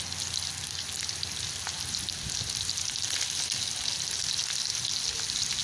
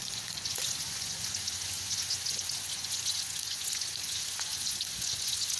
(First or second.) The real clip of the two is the first